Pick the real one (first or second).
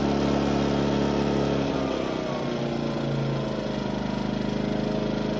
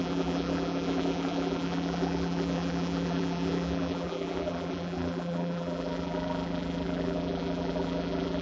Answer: first